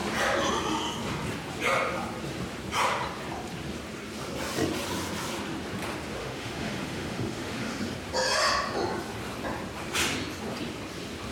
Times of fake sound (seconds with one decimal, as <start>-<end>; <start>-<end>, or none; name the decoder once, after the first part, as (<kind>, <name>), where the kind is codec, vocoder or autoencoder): 6.2-7.8 (autoencoder, DAC-VAE)